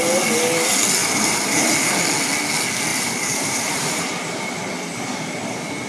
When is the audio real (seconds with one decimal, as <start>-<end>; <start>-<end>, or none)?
0.0-1.0; 1.9-2.9; 4.4-5.9